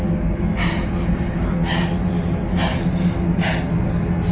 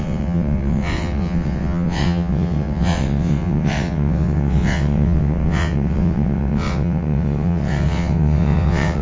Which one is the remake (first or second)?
second